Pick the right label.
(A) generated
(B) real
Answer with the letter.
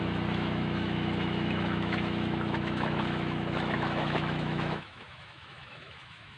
A